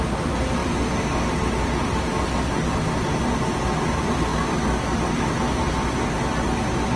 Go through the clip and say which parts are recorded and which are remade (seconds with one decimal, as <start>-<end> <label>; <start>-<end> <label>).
0.0-7.0 recorded